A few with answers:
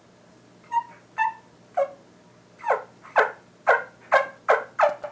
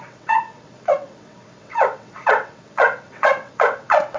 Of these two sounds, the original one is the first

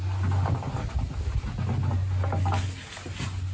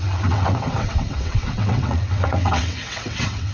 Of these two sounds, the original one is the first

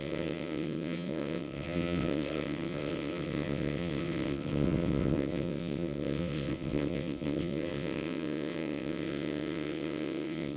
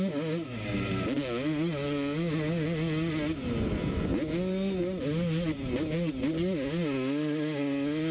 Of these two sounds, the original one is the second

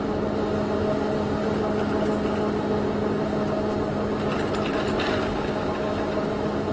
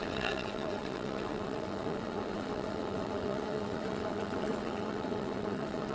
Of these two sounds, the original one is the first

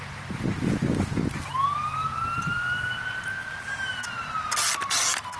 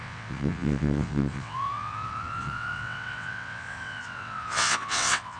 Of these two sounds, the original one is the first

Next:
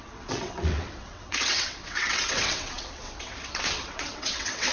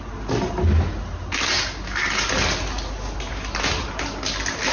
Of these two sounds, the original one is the second